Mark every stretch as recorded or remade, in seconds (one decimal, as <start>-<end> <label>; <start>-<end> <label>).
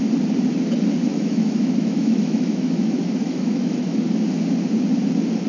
0.0-1.1 recorded; 1.1-4.0 remade; 4.0-5.5 recorded